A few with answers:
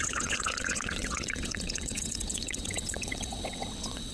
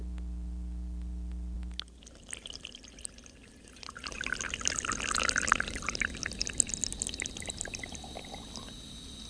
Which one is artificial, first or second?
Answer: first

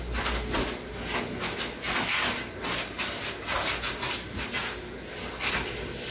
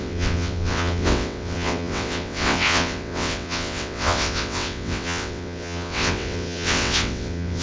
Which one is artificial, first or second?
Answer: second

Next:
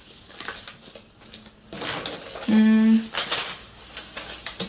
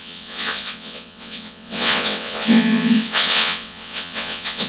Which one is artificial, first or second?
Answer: second